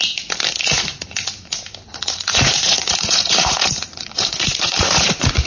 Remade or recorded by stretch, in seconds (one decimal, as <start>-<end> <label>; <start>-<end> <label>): 0.0-0.6 recorded; 0.6-1.5 remade; 1.5-1.9 recorded; 1.9-5.5 remade